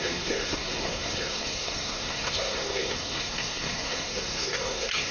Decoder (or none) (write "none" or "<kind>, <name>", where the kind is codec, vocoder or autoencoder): codec, SNAC